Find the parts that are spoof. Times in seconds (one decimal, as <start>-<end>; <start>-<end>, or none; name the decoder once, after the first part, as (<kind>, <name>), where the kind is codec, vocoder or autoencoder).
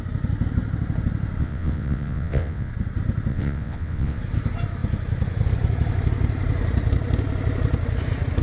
1.4-2.7 (vocoder, WaveNeXt); 3.3-4.2